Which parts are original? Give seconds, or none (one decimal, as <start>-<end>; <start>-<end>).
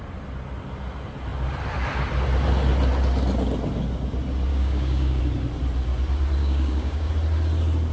0.0-4.5; 5.2-6.4; 7.1-7.9